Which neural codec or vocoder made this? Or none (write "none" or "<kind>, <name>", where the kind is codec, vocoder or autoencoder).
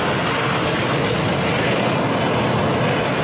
none